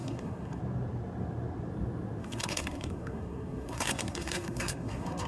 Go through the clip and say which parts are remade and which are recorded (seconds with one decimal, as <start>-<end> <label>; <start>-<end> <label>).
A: 0.0-0.6 remade; 0.6-2.2 recorded; 2.2-5.3 remade